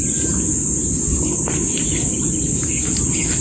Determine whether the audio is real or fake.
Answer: real